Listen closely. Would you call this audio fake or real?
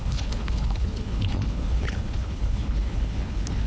fake